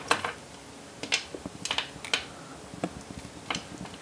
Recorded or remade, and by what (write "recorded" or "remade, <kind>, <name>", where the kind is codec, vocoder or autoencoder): recorded